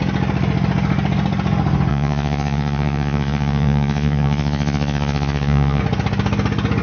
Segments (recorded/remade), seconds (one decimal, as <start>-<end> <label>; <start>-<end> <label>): 0.0-1.9 recorded; 1.9-5.8 remade; 5.8-6.8 recorded